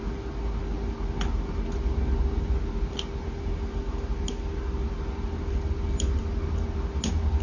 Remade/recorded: recorded